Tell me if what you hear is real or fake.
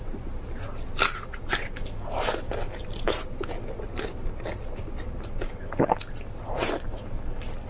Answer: real